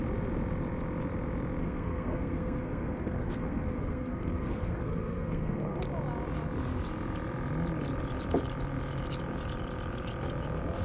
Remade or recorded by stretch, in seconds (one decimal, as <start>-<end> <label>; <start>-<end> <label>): 0.0-1.6 recorded; 1.6-5.8 remade; 5.8-10.8 recorded